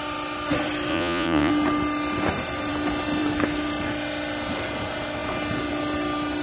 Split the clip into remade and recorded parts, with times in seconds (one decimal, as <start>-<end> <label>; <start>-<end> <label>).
0.0-0.9 recorded; 0.9-1.5 remade; 1.5-6.4 recorded